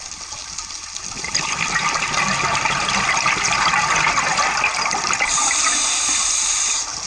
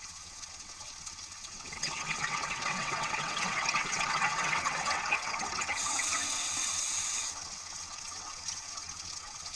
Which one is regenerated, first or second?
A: second